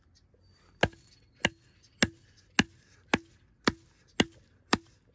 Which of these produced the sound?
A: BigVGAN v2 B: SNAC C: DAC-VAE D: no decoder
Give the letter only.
D